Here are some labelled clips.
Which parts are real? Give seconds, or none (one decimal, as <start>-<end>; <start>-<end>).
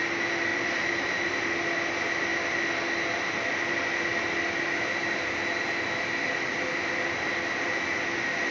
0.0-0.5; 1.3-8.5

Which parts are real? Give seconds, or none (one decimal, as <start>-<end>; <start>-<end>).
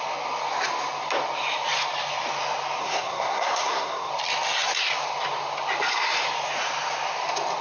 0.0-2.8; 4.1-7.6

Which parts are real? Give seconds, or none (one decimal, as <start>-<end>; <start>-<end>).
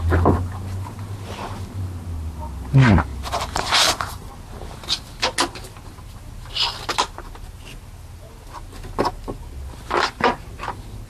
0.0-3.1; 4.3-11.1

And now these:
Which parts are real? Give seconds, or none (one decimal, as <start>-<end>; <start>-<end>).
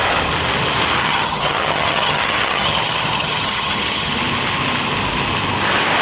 0.0-1.0; 4.2-6.0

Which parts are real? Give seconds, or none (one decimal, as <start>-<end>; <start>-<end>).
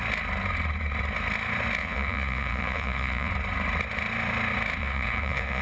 0.0-1.8; 3.3-4.8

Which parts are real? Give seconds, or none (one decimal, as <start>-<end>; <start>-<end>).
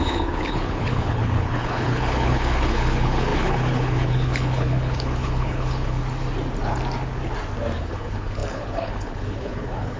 6.0-7.8